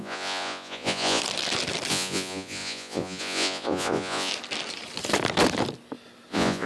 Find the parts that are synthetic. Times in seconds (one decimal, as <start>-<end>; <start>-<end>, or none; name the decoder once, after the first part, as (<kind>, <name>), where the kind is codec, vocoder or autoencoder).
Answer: 0.0-1.2 (vocoder, Vocos); 1.9-4.3; 6.3-6.7